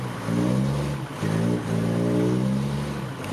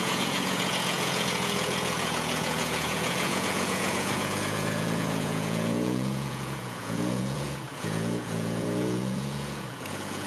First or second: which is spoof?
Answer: second